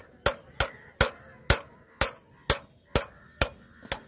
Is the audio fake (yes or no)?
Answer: no